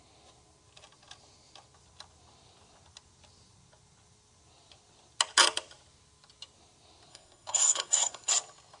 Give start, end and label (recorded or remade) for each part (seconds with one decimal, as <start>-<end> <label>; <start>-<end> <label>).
0.0-7.1 recorded; 7.1-8.3 remade; 8.3-8.8 recorded